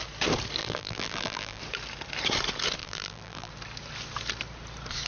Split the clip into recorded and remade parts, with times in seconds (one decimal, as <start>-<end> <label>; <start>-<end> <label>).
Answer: 0.0-0.6 recorded; 0.6-1.6 remade; 1.6-2.8 recorded; 2.8-3.5 remade; 3.5-5.1 recorded